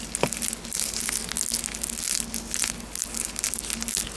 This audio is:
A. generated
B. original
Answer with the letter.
B